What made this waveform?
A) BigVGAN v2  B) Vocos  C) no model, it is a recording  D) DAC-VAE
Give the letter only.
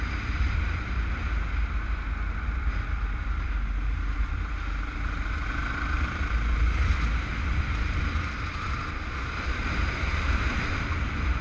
A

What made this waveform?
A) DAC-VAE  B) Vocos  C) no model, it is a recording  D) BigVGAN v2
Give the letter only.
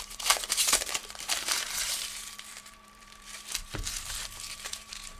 D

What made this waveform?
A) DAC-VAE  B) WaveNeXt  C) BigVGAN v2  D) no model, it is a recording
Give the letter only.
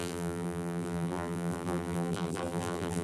C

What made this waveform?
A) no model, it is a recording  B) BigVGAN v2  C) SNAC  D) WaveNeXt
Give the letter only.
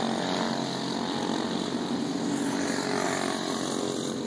A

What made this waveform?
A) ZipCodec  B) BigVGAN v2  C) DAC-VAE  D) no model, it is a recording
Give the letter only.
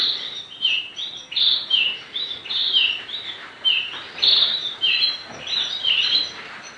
B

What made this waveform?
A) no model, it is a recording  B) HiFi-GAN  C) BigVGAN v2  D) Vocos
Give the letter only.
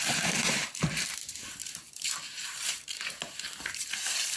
C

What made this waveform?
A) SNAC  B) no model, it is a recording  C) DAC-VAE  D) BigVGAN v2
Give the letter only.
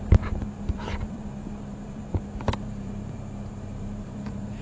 D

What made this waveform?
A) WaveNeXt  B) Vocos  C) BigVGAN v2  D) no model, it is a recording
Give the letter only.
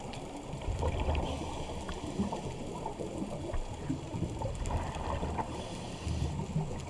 D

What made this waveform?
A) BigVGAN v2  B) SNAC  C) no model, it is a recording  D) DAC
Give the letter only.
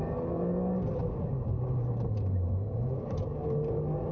C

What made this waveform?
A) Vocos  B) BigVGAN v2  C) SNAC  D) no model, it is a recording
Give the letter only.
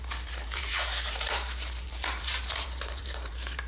B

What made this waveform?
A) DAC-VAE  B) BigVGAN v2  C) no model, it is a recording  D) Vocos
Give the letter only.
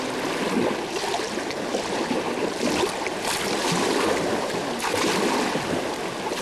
C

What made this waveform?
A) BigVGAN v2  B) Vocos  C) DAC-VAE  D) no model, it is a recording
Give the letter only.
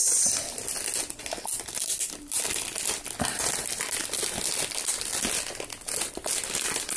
D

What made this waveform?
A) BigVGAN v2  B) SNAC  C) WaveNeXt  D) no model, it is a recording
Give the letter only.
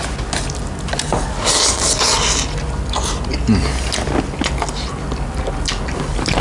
D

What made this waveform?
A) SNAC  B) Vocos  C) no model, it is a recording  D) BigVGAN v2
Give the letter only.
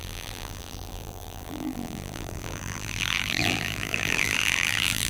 D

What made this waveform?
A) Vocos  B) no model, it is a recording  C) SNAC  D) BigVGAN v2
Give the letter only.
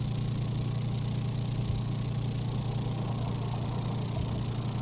B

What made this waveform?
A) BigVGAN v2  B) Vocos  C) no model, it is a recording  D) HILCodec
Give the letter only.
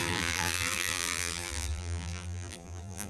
A